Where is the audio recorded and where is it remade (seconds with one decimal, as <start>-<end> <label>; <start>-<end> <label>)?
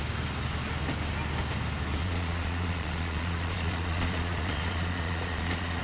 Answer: 0.0-2.0 recorded; 2.0-5.8 remade